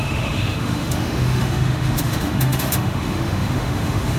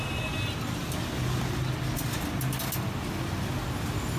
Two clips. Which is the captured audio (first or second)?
second